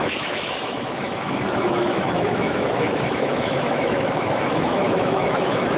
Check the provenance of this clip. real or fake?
fake